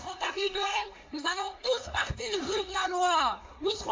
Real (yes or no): no